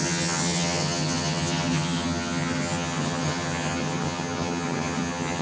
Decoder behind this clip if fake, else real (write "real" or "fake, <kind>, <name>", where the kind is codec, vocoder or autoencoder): fake, vocoder, HiFi-GAN